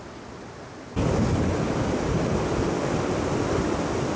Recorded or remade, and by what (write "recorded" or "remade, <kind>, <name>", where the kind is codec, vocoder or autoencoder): recorded